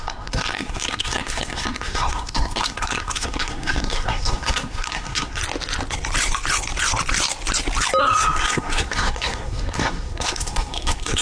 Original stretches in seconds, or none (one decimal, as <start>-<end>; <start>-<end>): 5.4-8.0